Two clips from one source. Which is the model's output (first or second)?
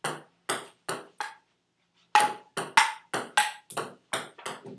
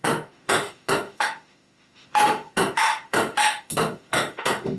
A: second